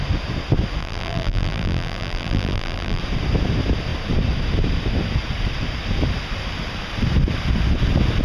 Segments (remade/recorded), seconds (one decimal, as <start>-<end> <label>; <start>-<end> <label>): 0.0-0.8 recorded; 0.8-3.0 remade; 3.0-8.2 recorded